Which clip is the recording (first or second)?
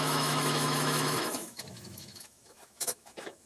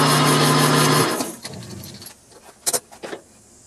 second